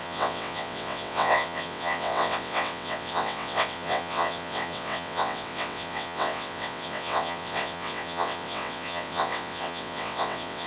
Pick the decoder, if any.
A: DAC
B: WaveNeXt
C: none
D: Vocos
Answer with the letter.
B